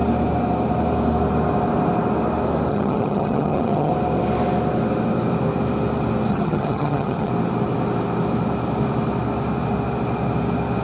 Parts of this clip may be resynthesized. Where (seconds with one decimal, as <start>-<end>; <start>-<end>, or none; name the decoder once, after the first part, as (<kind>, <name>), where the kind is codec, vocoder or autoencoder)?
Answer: 2.7-3.9 (vocoder, HiFi-GAN); 6.3-7.3